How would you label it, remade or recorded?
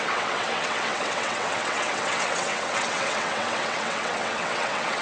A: remade